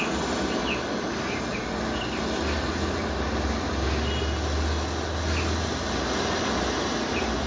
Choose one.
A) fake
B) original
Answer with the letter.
B